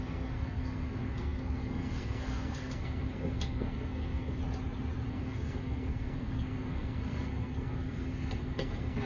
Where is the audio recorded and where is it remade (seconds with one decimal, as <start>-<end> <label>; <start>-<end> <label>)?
0.0-4.4 remade; 4.4-5.1 recorded; 5.1-9.1 remade

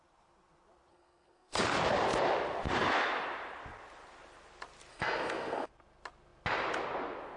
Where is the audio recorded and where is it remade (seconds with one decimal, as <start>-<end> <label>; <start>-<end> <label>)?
0.0-0.9 recorded; 0.9-1.6 remade; 1.6-4.9 recorded; 4.9-5.7 remade; 5.7-7.4 recorded